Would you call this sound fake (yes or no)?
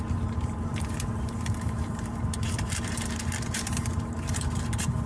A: yes